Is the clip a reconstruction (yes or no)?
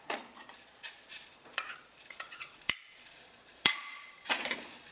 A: yes